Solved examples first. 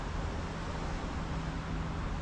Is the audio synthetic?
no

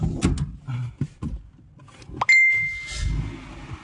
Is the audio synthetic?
no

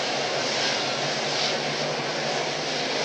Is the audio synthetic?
no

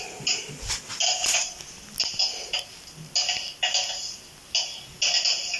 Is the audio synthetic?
no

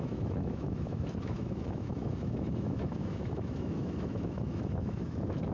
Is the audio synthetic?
yes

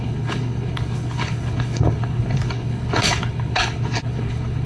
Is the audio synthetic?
yes